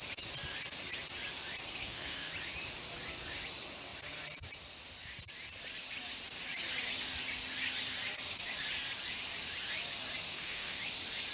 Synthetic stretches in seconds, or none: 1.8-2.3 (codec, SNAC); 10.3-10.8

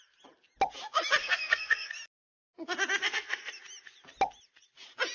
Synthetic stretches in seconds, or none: 1.2-1.9 (codec, SNAC); 3.0-3.5

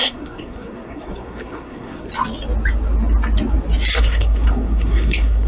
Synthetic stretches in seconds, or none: 0.0-2.1 (codec, SNAC); 4.0-5.5

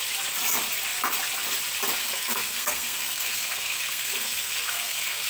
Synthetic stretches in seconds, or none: 2.0-5.3 (codec, SNAC)

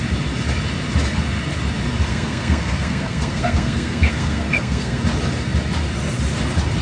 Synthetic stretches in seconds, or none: 2.1-5.0 (codec, SNAC)